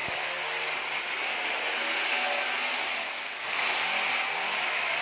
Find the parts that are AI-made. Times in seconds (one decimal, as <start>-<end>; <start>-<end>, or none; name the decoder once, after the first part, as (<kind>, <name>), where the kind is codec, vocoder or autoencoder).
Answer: 3.0-3.6 (codec, SNAC)

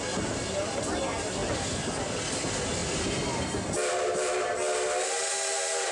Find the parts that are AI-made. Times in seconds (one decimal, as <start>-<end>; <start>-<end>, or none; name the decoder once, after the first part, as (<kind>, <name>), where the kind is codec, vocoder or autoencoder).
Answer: none

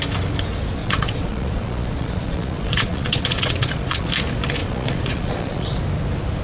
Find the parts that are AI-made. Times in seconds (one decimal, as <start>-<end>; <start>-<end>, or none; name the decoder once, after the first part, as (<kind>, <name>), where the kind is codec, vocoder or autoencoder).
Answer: 0.8-4.1 (vocoder, Vocos); 4.6-5.8

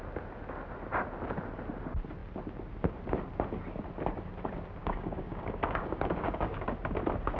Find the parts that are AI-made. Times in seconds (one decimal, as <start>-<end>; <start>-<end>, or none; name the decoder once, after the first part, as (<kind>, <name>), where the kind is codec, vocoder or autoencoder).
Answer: 4.8-6.7 (codec, DAC)

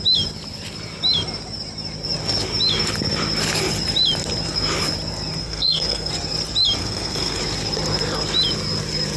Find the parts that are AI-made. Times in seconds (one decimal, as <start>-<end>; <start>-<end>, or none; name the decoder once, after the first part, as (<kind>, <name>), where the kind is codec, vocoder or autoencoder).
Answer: 5.4-6.1 (codec, SNAC); 6.8-7.4

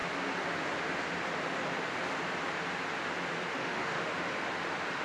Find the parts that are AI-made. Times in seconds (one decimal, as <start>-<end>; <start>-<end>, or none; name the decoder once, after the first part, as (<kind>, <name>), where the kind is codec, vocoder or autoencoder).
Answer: 3.5-4.1 (autoencoder, DAC-VAE)